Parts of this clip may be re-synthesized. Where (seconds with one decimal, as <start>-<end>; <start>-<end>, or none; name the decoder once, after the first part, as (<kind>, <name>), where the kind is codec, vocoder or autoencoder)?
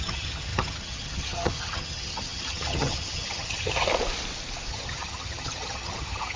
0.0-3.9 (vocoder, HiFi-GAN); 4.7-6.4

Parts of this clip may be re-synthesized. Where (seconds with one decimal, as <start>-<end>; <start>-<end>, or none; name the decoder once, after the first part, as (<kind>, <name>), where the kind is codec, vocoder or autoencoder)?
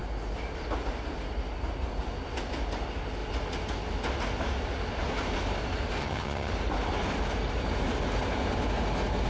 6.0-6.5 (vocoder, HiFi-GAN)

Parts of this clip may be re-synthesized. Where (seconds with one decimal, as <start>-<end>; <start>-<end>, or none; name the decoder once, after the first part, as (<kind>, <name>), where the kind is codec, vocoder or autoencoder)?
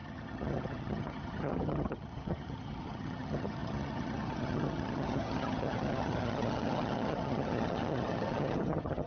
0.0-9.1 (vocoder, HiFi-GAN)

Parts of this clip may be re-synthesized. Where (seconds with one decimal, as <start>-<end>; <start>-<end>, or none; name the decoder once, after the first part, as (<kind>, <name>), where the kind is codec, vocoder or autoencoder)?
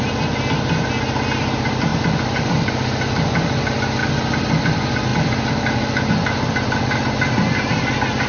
none